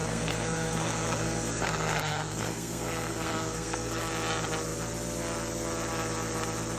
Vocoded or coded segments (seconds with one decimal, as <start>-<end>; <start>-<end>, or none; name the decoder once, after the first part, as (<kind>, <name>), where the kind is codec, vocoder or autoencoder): 0.0-4.1 (codec, SNAC)

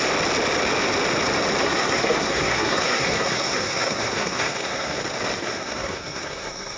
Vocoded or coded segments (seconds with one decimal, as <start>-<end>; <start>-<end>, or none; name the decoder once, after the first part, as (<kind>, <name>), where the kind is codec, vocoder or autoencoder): 1.6-5.0 (codec, SNAC); 5.4-6.8